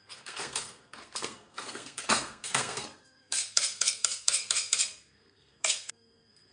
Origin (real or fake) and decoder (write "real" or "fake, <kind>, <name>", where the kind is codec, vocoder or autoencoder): fake, codec, SNAC